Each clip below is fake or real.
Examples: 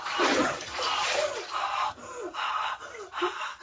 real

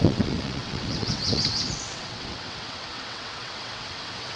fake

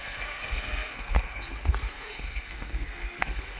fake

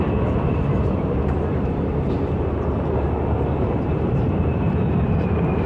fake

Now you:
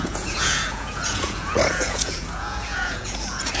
fake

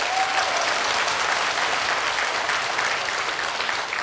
real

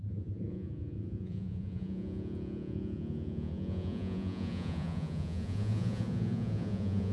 fake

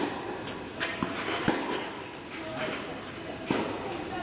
real